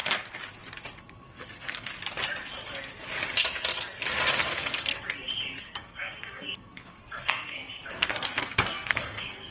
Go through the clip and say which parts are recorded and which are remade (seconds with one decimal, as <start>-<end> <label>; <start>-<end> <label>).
0.0-1.0 recorded; 1.0-1.9 remade; 1.9-4.3 recorded; 4.3-4.9 remade; 4.9-5.6 recorded; 5.6-9.5 remade